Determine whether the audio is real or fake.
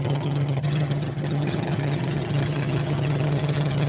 fake